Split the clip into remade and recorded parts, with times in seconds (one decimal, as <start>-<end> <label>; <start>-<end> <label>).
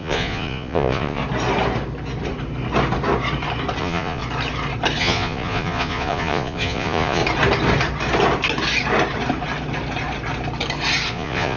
0.0-1.2 remade; 1.2-3.8 recorded; 3.8-4.2 remade; 4.2-5.0 recorded; 5.0-7.2 remade; 7.2-11.1 recorded; 11.1-11.6 remade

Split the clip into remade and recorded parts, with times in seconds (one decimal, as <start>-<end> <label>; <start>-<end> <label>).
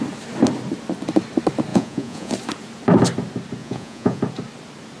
0.0-1.7 recorded; 1.7-2.3 remade; 2.3-3.6 recorded; 3.6-4.2 remade; 4.2-5.0 recorded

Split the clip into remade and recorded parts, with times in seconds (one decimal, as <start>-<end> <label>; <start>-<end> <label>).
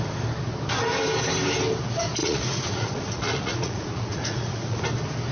0.0-2.2 recorded; 2.2-4.8 remade; 4.8-5.3 recorded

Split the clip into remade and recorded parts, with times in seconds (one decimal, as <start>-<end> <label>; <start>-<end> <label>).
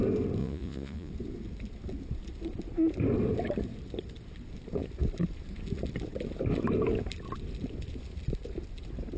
0.0-0.4 recorded; 0.4-1.1 remade; 1.1-9.2 recorded